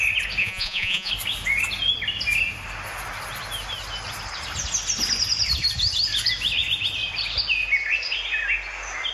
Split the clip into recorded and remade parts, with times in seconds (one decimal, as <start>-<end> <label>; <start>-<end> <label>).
0.0-0.4 recorded; 0.4-1.1 remade; 1.1-9.1 recorded